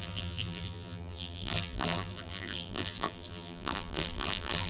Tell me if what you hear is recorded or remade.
remade